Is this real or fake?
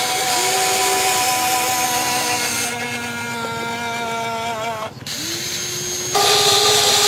real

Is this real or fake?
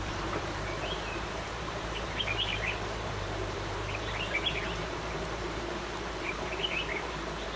fake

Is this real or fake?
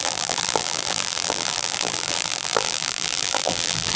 fake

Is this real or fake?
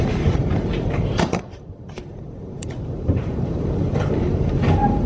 fake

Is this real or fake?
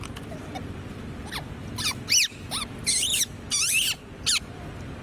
fake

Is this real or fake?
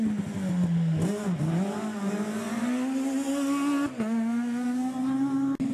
real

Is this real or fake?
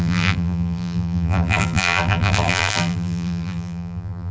fake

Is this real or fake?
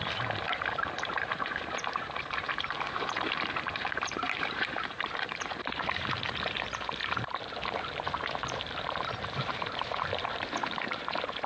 fake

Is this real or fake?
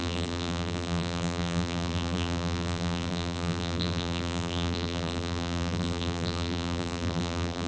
fake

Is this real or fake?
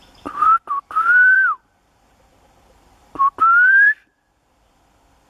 fake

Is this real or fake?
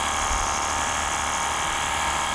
real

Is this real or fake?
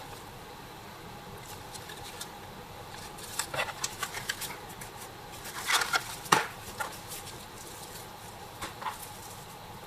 fake